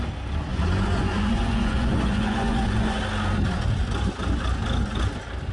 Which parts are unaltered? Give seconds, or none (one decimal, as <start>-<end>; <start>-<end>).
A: 0.0-0.5; 3.0-5.5